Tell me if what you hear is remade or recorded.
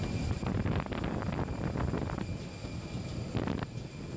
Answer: recorded